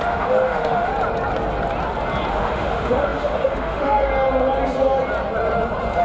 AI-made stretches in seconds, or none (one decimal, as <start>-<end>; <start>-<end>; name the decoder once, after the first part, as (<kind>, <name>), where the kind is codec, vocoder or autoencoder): 0.0-0.9 (autoencoder, DAC-VAE); 2.3-4.1